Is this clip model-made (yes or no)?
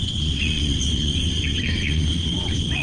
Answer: yes